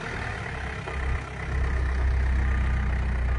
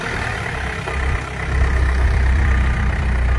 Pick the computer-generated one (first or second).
second